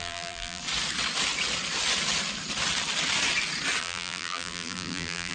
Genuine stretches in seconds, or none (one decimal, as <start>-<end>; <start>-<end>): 0.6-3.8